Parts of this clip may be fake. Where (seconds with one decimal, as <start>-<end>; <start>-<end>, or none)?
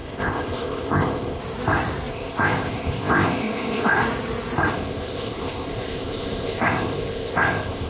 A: 0.0-1.4; 2.1-4.0; 4.7-7.9